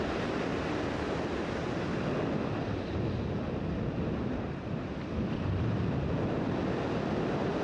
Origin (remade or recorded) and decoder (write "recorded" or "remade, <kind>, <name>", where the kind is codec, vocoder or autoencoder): recorded